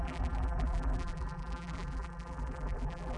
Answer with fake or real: fake